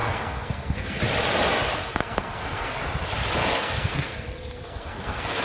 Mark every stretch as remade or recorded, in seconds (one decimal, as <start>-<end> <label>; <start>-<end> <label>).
0.0-1.0 remade; 1.0-1.8 recorded; 1.8-2.8 remade; 2.8-3.4 recorded; 3.4-5.4 remade